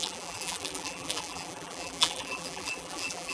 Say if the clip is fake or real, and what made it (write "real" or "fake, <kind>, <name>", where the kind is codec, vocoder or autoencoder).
fake, vocoder, BigVGAN v2